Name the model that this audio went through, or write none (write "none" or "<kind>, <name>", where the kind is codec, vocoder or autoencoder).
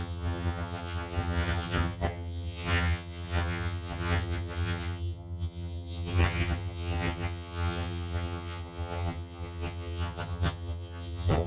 vocoder, HiFi-GAN